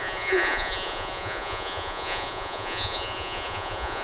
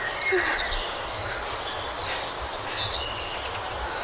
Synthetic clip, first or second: first